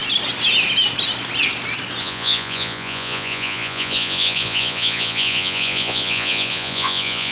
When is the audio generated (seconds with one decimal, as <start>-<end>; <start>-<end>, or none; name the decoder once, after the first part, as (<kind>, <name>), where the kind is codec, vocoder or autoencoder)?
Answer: 2.0-7.3 (vocoder, Vocos)